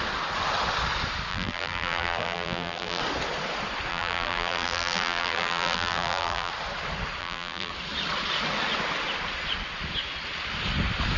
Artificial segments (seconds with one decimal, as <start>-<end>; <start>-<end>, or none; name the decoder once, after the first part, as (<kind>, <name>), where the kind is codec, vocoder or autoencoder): 1.3-3.0 (vocoder, BigVGAN v2); 3.9-6.5; 7.2-7.7